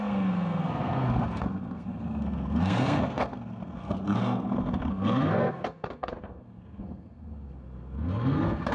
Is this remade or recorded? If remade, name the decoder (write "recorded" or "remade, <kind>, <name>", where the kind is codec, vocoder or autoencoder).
remade, codec, SNAC